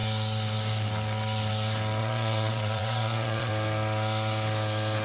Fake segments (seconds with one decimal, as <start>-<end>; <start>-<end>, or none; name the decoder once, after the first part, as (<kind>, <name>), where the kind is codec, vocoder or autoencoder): 2.0-3.5 (vocoder, Vocos)